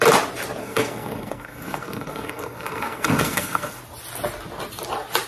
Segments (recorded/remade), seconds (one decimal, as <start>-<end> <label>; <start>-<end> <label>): 0.0-0.6 recorded; 0.6-3.8 remade; 3.8-5.3 recorded

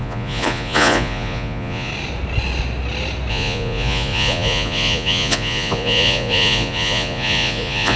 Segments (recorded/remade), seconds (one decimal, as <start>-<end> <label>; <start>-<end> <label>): 0.0-1.9 remade; 1.9-3.3 recorded; 3.3-8.0 remade

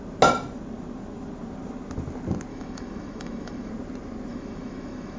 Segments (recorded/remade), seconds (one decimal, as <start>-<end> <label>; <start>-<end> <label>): 0.0-2.5 recorded; 2.5-3.7 remade; 3.7-4.3 recorded; 4.3-5.2 remade

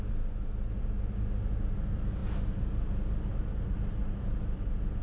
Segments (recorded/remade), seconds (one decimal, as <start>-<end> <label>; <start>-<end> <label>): 0.0-5.0 recorded

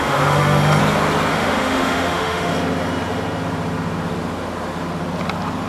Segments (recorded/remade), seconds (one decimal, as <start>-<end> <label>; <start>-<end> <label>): 0.0-0.8 remade; 0.8-1.3 recorded; 1.3-2.5 remade; 2.5-5.7 recorded